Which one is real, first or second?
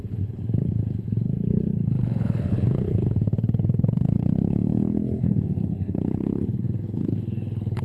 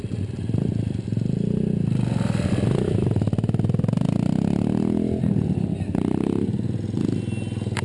second